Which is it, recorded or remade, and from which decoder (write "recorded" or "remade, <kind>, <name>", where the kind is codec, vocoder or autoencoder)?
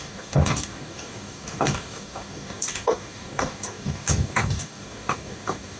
remade, codec, DAC